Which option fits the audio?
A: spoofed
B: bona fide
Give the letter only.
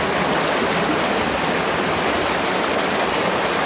B